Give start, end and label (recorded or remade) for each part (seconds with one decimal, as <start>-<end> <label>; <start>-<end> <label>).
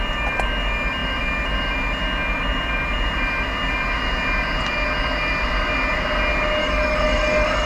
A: 0.0-6.6 recorded; 6.6-7.7 remade